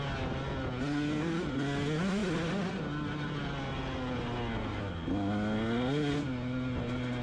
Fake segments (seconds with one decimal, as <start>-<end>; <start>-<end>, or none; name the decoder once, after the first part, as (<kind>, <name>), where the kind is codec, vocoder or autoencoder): none